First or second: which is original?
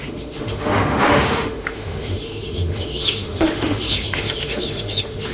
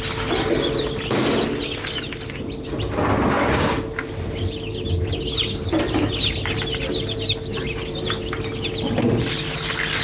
second